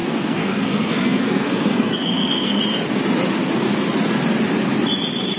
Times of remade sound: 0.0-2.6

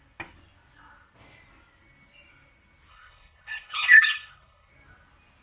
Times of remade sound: 2.9-4.7

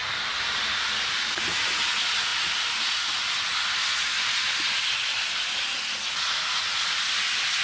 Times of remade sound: none

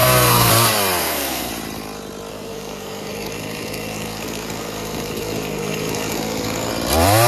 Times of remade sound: 0.0-0.5; 1.0-1.5; 2.3-6.7